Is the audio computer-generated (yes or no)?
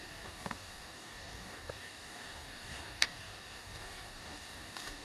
yes